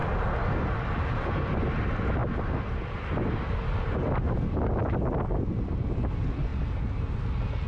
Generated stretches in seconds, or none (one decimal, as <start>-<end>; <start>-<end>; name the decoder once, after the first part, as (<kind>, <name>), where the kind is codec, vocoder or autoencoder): none